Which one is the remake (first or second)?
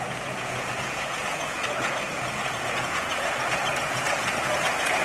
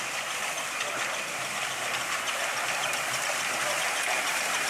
first